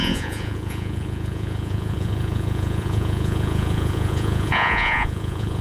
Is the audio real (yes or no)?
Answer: no